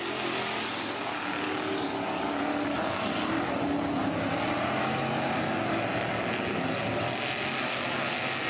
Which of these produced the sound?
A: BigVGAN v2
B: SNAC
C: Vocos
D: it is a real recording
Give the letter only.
D